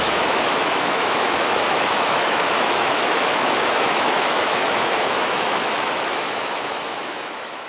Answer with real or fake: fake